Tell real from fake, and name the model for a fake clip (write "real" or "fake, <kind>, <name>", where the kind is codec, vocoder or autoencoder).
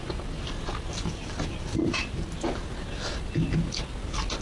real